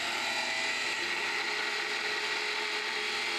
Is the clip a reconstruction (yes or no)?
no